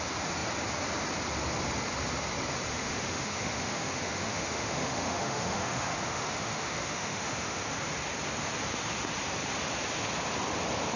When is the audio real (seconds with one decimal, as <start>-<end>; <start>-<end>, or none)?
0.0-2.7; 7.6-11.0